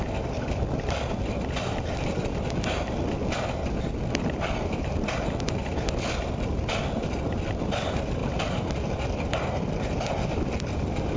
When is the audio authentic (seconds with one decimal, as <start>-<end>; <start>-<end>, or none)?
0.0-11.2